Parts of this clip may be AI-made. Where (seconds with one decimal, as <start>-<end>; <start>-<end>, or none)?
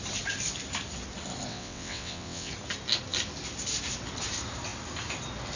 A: 1.5-2.5